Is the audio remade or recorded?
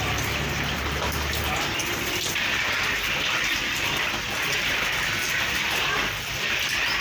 remade